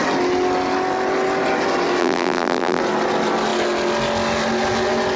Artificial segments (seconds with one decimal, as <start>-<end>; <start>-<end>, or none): 2.0-2.8